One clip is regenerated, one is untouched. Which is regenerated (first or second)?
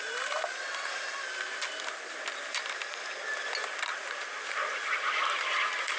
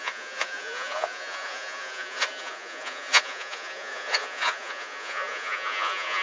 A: second